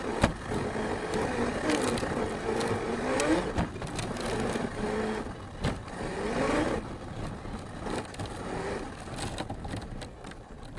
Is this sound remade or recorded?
recorded